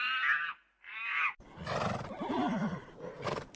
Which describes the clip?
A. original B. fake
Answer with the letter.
A